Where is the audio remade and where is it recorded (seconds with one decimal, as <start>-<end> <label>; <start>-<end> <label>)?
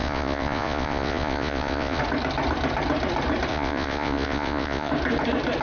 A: 0.0-2.0 remade; 2.0-3.5 recorded; 3.5-4.9 remade; 4.9-5.6 recorded